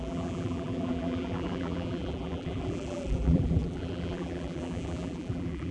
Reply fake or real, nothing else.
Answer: fake